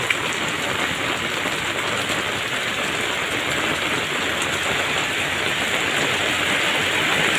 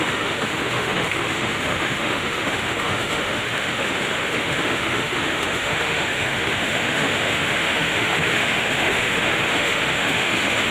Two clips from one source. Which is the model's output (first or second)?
second